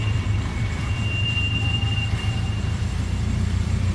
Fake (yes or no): yes